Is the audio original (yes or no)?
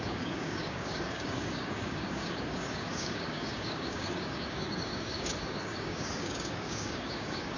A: no